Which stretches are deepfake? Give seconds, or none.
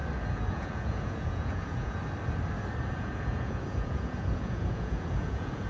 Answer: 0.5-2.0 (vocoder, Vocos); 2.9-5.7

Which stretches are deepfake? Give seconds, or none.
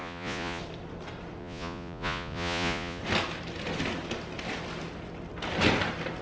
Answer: 0.0-0.6 (vocoder, Vocos); 1.4-3.0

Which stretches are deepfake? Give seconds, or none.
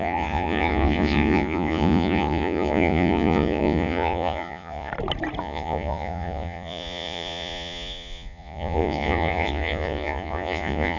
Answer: 0.0-4.9 (vocoder, Vocos); 5.4-11.0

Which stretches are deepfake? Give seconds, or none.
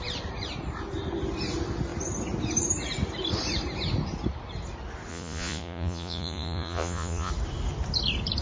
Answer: 5.1-7.3 (vocoder, Vocos)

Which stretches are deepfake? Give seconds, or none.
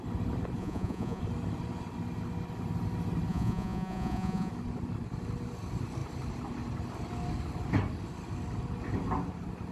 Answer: 0.6-1.2 (vocoder, Vocos); 3.3-4.5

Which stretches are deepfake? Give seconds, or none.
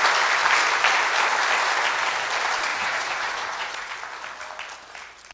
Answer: 2.7-3.9 (vocoder, Vocos)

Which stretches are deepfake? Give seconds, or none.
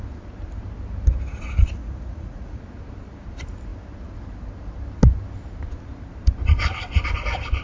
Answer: 1.8-2.6 (vocoder, Vocos)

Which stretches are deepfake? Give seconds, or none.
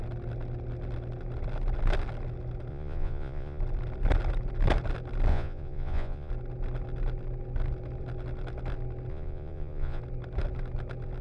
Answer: 2.7-3.6 (vocoder, Vocos); 5.3-6.3; 9.1-10.0